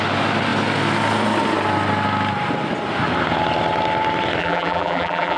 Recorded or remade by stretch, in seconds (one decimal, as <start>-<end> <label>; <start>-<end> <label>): 0.0-4.4 recorded; 4.4-5.4 remade